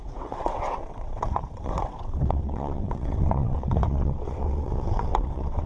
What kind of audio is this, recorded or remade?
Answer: remade